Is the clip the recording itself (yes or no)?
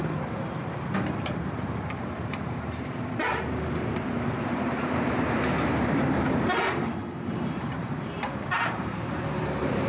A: no